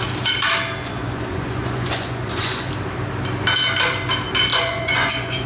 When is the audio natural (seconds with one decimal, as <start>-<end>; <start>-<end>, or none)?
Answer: 0.0-0.8; 2.7-4.5